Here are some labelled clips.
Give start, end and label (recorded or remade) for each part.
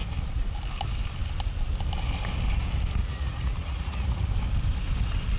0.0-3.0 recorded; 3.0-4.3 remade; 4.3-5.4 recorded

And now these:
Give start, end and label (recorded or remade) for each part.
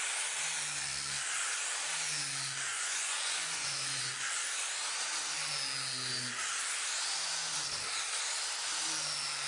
0.0-2.7 recorded; 2.7-4.1 remade; 4.1-9.5 recorded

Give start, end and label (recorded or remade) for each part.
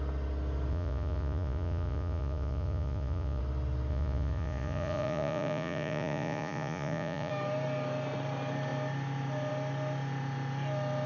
0.0-0.7 recorded; 0.7-3.4 remade; 3.4-3.9 recorded; 3.9-7.3 remade; 7.3-11.1 recorded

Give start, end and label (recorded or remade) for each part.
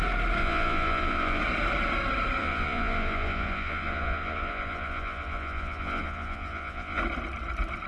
0.0-0.4 recorded; 0.4-1.4 remade; 1.4-2.4 recorded; 2.4-7.0 remade; 7.0-7.9 recorded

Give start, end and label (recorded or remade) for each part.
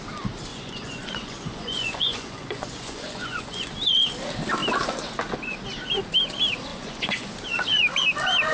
0.0-0.5 recorded; 0.5-3.7 remade; 3.7-6.7 recorded; 6.7-7.3 remade; 7.3-8.5 recorded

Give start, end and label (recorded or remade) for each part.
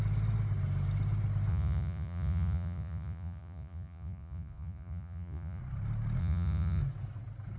0.0-1.5 recorded; 1.5-5.6 remade; 5.6-6.2 recorded; 6.2-6.8 remade; 6.8-7.6 recorded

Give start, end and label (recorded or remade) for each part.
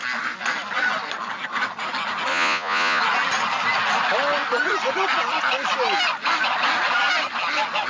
0.0-2.3 recorded; 2.3-3.0 remade; 3.0-7.9 recorded